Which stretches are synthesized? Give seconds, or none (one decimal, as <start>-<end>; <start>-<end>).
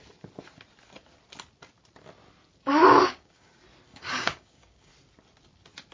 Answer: 2.7-3.5; 3.9-4.9